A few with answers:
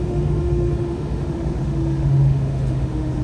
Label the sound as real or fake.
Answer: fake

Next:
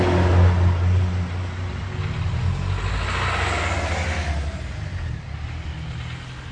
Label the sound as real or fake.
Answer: real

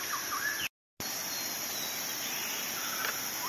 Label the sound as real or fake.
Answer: real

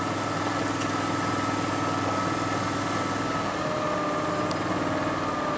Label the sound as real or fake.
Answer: real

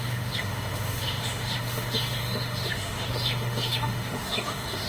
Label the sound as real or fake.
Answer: fake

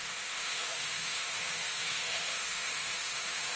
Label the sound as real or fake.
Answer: fake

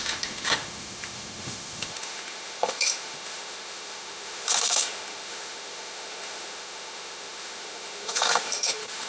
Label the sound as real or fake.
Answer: fake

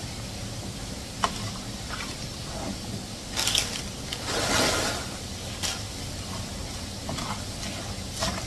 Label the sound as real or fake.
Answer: real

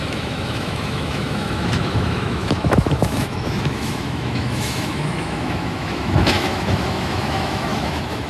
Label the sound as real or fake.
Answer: fake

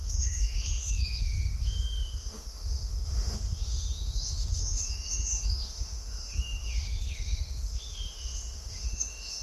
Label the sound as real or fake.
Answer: fake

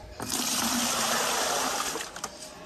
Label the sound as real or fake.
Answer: real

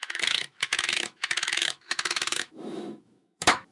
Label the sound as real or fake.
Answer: fake